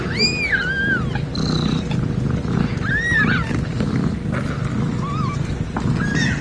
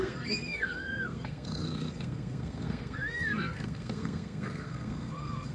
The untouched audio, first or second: first